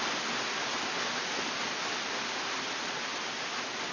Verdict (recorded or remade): recorded